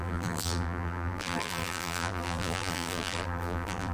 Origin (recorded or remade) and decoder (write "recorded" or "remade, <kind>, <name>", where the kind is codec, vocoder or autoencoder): remade, vocoder, BigVGAN v2